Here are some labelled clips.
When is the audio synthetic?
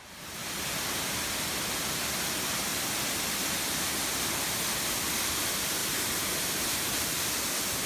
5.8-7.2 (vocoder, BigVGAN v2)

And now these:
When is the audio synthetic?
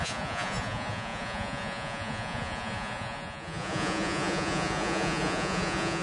0.0-6.0 (vocoder, Vocos)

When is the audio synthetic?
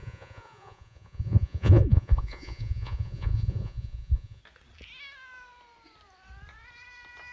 0.0-4.4 (vocoder, Vocos)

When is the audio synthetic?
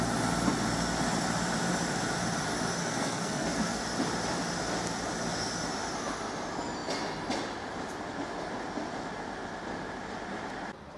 2.8-3.8 (codec, SNAC)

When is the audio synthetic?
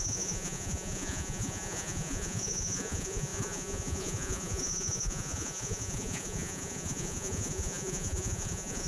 0.0-8.9 (vocoder, Vocos)